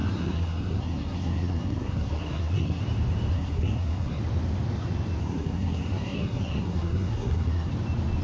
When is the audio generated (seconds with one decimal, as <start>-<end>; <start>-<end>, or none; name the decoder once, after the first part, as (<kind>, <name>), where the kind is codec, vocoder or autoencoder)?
0.0-2.8 (codec, SNAC); 3.3-4.2; 5.2-7.7